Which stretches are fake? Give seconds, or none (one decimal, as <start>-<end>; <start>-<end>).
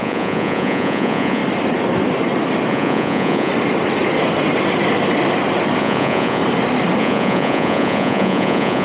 0.0-1.4; 2.7-3.5; 5.8-6.4; 7.0-8.8